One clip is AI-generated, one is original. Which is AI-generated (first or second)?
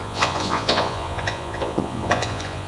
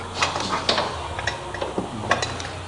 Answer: first